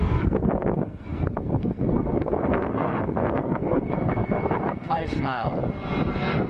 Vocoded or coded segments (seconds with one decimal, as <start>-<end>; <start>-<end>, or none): 0.0-5.6; 6.1-6.5